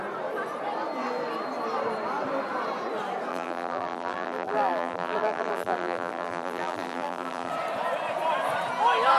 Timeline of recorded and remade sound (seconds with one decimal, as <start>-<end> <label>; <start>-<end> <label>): 0.0-3.3 recorded; 3.3-7.5 remade; 7.5-9.2 recorded